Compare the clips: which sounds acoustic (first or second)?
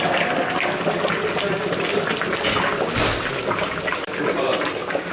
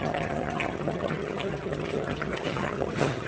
first